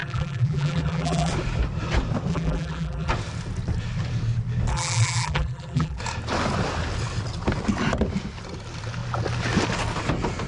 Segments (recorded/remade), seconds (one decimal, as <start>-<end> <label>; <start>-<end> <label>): 0.0-1.3 remade; 1.3-2.3 recorded; 2.3-3.1 remade; 3.1-4.7 recorded; 4.7-6.0 remade; 6.0-10.5 recorded